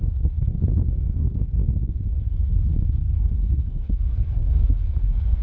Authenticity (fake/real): fake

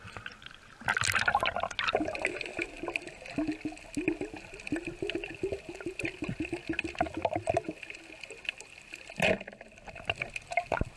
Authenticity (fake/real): real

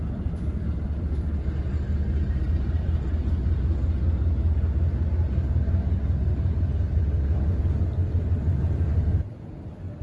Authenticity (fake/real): real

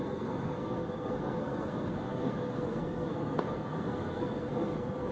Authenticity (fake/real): fake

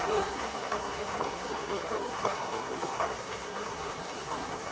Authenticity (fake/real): fake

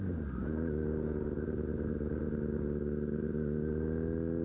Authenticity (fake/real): real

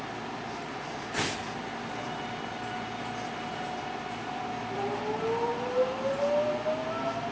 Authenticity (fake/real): real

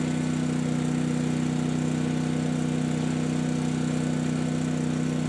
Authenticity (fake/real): real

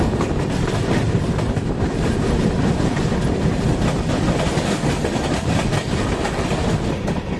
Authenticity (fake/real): real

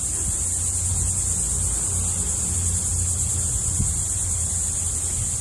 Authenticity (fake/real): real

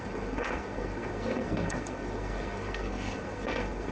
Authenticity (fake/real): fake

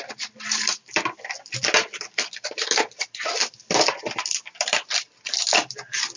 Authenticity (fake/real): real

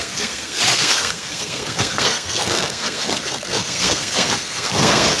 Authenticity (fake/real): fake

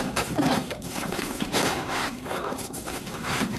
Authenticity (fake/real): fake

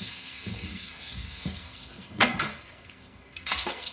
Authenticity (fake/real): fake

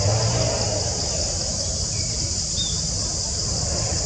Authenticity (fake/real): real